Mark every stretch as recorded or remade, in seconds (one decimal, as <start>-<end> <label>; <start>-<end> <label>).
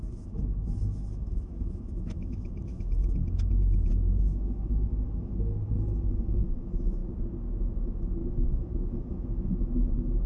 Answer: 0.0-7.0 remade; 7.0-7.6 recorded; 7.6-10.3 remade